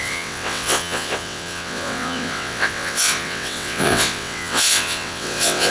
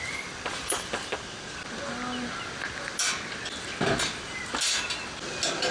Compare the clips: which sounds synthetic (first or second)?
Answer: first